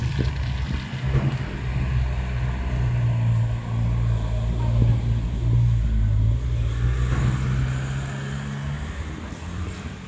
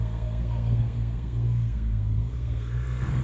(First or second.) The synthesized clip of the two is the second